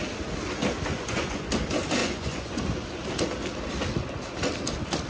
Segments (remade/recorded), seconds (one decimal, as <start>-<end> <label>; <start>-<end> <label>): 0.0-0.9 recorded; 0.9-1.5 remade; 1.5-2.0 recorded; 2.0-2.6 remade; 2.6-5.1 recorded